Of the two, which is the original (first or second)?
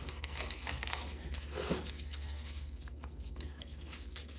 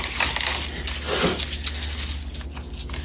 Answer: second